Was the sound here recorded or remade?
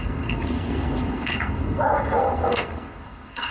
remade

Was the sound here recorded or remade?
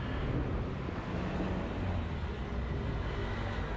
recorded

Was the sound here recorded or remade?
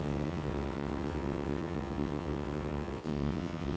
remade